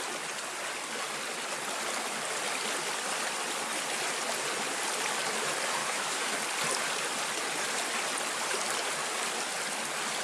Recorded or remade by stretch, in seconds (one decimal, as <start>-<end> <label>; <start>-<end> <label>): 0.0-5.8 recorded; 5.8-6.4 remade; 6.4-10.2 recorded